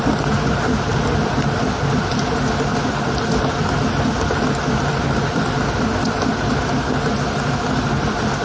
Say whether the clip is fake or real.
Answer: real